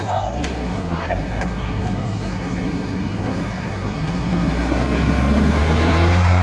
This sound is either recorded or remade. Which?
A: remade